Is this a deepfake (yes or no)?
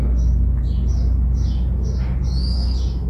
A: no